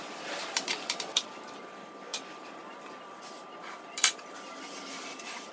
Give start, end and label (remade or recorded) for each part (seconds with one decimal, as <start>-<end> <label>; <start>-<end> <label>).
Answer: 0.0-5.5 remade